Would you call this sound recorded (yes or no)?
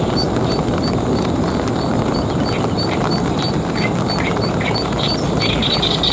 yes